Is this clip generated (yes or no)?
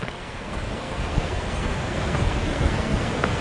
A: yes